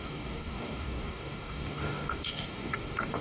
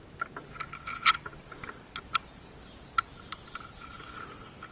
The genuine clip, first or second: second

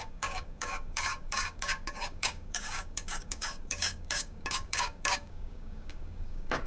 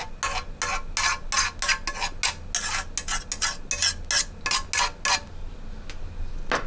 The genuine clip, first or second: second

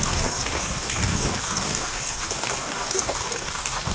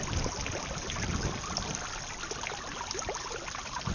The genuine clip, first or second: second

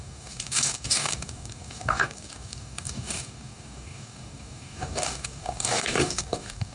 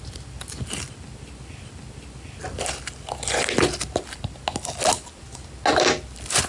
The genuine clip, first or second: second